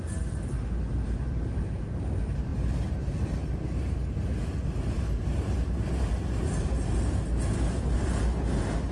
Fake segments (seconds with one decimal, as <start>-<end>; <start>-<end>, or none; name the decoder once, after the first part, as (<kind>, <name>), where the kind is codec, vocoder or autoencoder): none